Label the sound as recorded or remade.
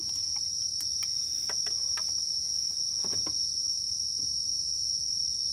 recorded